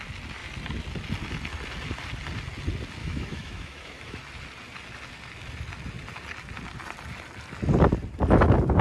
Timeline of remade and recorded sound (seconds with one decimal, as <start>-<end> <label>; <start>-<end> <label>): 0.0-3.0 recorded; 3.0-4.2 remade; 4.2-8.8 recorded